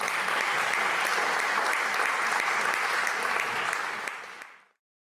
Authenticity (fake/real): real